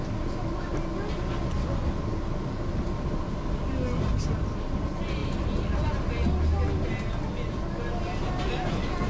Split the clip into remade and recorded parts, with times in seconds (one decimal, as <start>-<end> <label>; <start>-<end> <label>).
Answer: 0.0-9.1 recorded